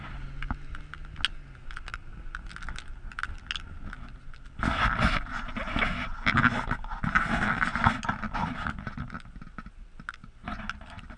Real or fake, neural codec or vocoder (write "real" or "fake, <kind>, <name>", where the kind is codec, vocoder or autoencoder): real